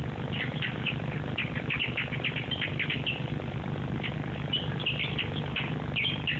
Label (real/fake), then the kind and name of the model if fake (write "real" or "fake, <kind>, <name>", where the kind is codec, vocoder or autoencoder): real